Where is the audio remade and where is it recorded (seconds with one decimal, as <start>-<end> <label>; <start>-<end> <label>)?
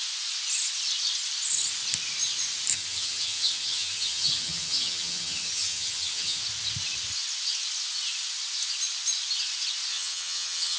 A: 0.0-2.7 recorded; 2.7-6.4 remade; 6.4-9.9 recorded; 9.9-10.8 remade